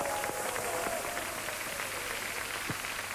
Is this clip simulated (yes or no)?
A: no